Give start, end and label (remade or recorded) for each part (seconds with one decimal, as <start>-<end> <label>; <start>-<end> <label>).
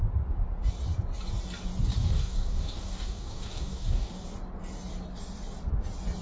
0.0-1.9 recorded; 1.9-4.2 remade; 4.2-6.2 recorded